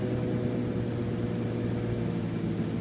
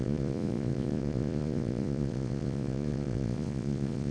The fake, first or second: second